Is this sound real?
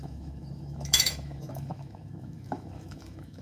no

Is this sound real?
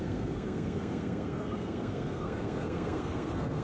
no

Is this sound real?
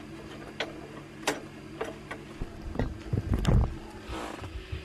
yes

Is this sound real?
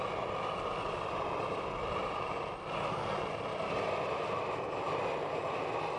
yes